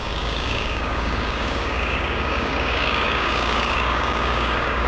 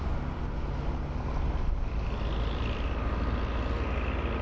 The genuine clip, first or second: second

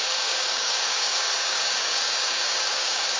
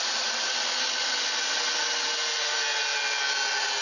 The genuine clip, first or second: second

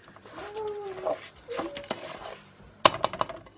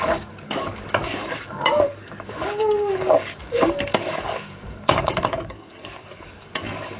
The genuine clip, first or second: first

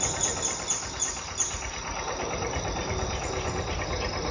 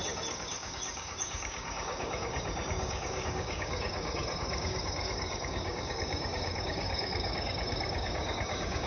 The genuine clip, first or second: first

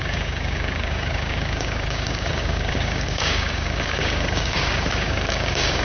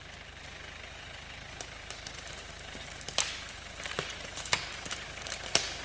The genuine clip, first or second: second